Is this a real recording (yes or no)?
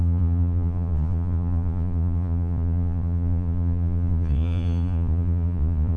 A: no